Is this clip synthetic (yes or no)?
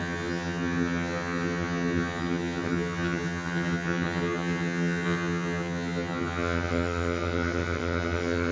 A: yes